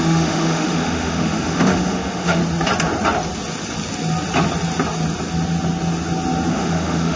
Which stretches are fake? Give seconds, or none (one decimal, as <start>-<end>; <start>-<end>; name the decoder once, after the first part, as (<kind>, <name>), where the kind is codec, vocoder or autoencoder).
0.0-2.4 (autoencoder, DAC-VAE); 6.5-7.2